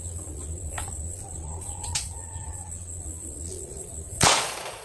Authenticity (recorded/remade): remade